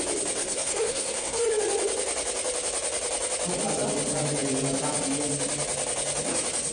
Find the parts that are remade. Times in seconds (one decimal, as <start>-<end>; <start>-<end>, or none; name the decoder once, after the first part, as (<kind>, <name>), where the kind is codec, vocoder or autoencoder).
0.4-1.5 (codec, SNAC)